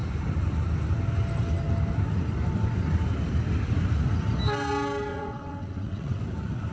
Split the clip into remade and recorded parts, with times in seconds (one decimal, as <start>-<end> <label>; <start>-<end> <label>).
0.0-5.1 recorded; 5.1-6.2 remade; 6.2-6.7 recorded